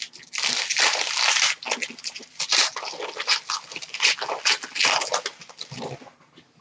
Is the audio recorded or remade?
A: recorded